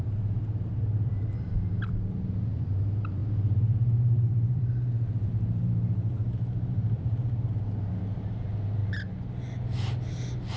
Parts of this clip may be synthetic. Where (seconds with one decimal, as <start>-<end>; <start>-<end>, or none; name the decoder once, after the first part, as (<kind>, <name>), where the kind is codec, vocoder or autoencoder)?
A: 0.0-8.8 (vocoder, BigVGAN v2)